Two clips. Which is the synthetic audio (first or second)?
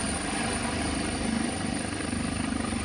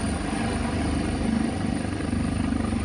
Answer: first